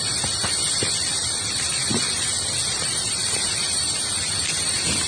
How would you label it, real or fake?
real